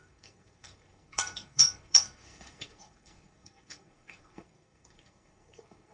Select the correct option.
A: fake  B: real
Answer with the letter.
A